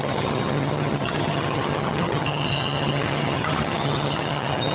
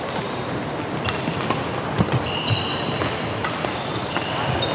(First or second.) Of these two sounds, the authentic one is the second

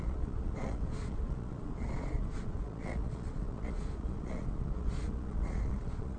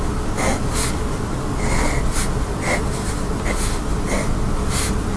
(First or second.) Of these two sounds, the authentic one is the second